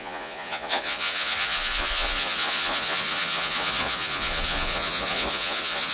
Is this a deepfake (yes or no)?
yes